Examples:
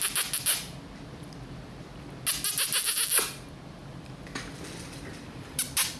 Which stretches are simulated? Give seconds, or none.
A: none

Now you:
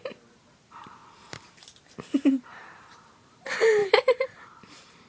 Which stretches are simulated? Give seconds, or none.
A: 0.0-1.0 (vocoder, BigVGAN v2); 2.3-5.1

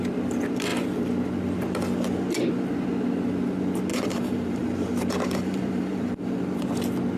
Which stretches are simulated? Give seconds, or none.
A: 3.9-6.7 (vocoder, BigVGAN v2)

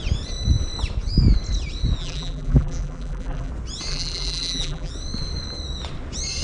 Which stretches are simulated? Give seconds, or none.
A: 2.0-3.5 (vocoder, BigVGAN v2); 3.9-4.9

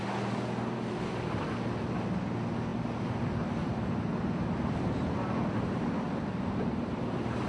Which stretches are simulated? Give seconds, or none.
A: 2.7-7.5 (vocoder, BigVGAN v2)

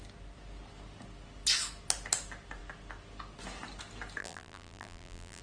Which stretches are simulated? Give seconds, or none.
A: 4.2-5.4 (vocoder, BigVGAN v2)

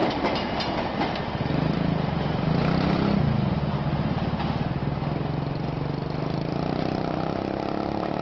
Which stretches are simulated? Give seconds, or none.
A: 0.0-4.8 (vocoder, BigVGAN v2)